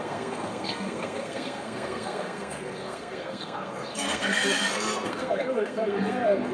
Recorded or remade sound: remade